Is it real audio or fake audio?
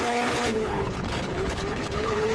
fake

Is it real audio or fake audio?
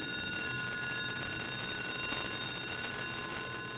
real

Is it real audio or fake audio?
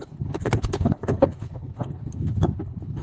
fake